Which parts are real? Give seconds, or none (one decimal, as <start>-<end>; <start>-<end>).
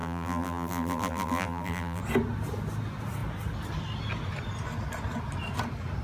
2.0-6.0